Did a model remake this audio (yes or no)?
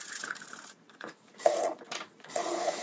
yes